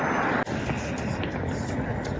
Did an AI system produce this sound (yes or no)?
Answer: no